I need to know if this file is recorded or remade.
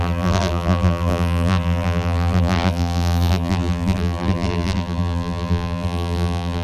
remade